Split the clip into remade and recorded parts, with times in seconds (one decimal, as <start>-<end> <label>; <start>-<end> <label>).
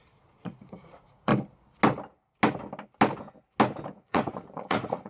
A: 0.0-1.3 remade; 1.3-3.9 recorded; 3.9-5.1 remade